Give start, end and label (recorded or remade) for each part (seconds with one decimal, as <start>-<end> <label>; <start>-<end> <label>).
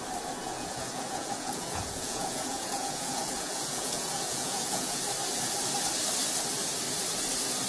0.0-0.4 recorded; 0.4-5.0 remade; 5.0-7.7 recorded